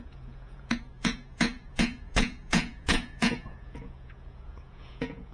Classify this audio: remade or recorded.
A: remade